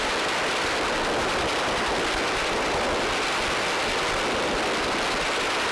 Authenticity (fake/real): real